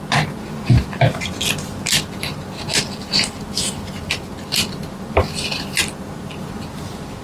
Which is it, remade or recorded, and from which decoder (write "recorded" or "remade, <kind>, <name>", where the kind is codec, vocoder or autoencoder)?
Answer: recorded